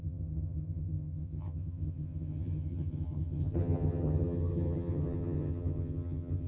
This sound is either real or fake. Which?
fake